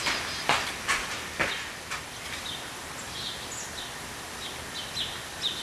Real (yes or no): yes